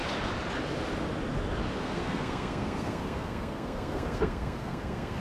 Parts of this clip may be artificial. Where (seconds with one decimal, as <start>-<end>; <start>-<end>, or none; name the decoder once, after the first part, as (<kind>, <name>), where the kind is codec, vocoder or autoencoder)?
1.8-5.2 (codec, SNAC)